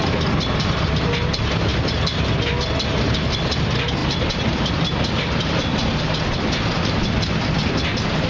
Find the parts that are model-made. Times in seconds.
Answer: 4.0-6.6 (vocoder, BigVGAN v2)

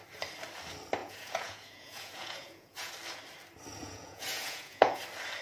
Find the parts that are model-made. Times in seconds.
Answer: 1.0-2.9 (vocoder, Vocos); 3.8-5.0

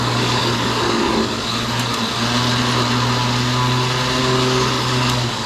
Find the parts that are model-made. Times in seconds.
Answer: 0.0-1.9 (codec, DAC); 4.2-5.5

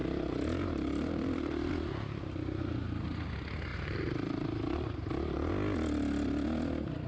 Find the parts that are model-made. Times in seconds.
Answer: 0.0-1.7 (vocoder, BigVGAN v2); 3.7-5.5